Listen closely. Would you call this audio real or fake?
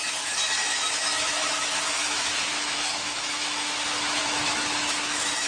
fake